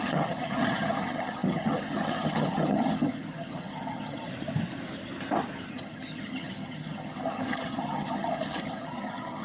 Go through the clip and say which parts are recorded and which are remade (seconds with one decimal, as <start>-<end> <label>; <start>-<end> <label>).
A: 0.0-4.3 remade; 4.3-5.7 recorded; 5.7-9.4 remade